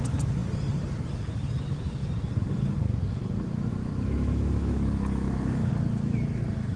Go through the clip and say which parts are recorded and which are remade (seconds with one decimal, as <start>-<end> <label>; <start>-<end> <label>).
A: 0.0-3.7 recorded; 3.7-5.7 remade; 5.7-6.8 recorded